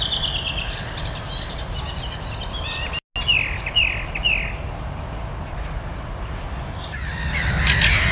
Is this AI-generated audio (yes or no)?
no